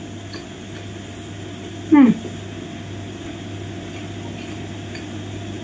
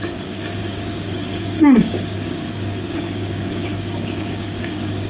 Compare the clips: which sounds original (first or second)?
first